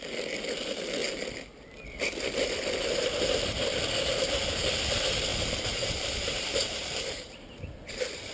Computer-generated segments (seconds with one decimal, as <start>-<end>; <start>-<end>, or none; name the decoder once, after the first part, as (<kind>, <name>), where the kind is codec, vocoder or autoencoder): 5.3-7.5 (vocoder, BigVGAN v2)